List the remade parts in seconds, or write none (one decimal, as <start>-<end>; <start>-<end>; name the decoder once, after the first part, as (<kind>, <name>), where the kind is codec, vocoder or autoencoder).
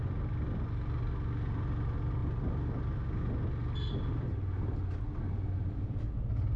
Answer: none